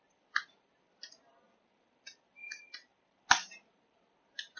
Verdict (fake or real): real